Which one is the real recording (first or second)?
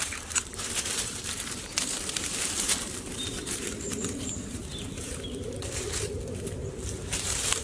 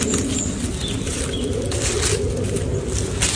second